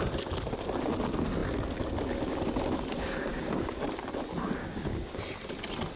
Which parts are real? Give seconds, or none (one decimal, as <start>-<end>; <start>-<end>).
0.0-3.3; 3.9-4.6; 5.2-6.0